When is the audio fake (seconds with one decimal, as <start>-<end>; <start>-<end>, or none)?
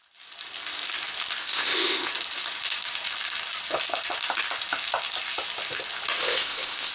1.4-2.1; 6.2-6.9